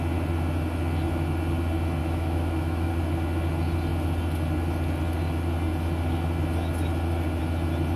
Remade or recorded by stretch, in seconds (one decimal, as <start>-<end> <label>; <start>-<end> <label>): 0.0-2.0 recorded; 2.0-2.9 remade; 2.9-8.0 recorded